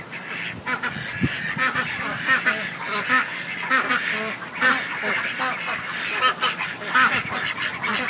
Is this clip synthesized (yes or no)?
no